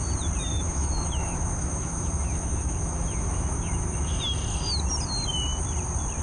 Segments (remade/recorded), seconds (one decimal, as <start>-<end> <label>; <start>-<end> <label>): 0.0-0.5 recorded; 0.5-4.2 remade; 4.2-6.2 recorded